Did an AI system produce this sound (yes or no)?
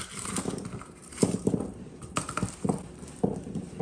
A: no